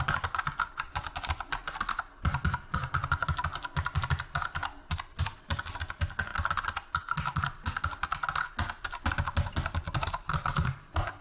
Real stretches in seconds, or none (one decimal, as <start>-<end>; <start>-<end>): 0.0-11.2